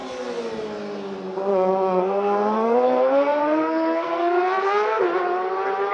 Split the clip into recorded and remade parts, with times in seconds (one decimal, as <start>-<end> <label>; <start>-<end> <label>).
0.0-1.5 recorded; 1.5-5.0 remade; 5.0-5.9 recorded